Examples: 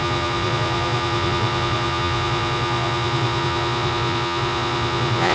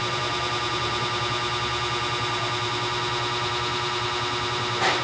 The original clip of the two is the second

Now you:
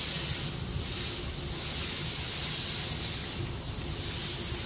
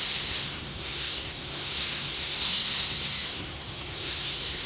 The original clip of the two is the first